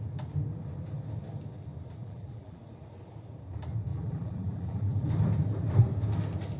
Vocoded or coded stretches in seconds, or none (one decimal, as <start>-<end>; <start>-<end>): 2.0-2.6; 3.9-5.1